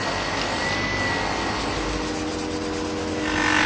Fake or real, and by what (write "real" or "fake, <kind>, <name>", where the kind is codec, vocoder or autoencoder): real